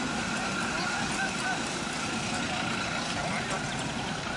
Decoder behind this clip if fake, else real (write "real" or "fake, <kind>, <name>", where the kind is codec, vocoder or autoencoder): real